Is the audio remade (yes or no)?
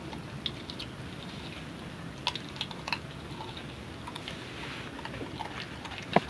no